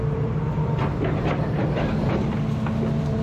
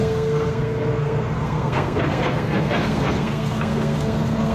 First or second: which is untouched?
first